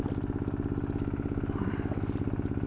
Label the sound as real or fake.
real